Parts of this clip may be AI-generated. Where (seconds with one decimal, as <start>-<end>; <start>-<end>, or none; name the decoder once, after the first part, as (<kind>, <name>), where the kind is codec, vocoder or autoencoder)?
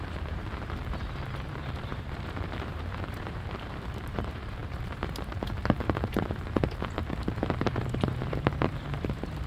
0.0-9.5 (vocoder, BigVGAN v2)